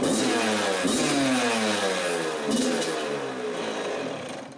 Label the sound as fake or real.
real